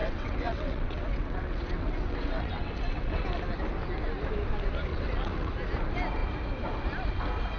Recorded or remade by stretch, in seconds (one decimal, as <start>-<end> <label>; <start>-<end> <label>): 0.0-3.2 remade; 3.2-4.9 recorded; 4.9-5.5 remade; 5.5-7.6 recorded